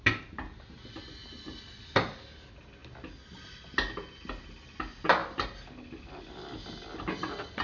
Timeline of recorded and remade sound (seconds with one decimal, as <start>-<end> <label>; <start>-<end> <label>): 0.0-7.6 recorded